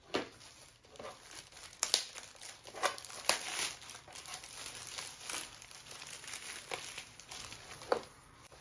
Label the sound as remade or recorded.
recorded